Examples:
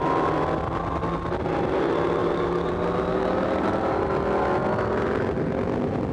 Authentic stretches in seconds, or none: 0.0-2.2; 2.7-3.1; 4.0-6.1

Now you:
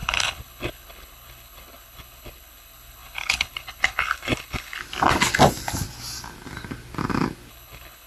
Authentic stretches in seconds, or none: 4.8-7.5

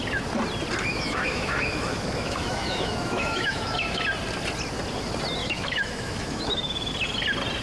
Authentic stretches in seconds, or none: 0.0-0.9; 4.0-5.4; 6.9-7.6

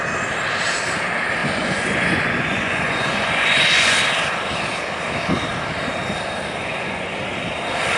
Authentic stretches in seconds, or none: 0.0-1.4; 4.0-6.6; 7.2-8.0